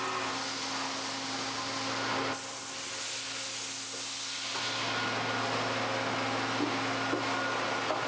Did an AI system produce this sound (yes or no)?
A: no